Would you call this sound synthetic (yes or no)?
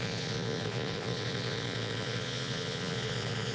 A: yes